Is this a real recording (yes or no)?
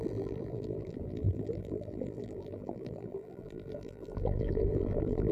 no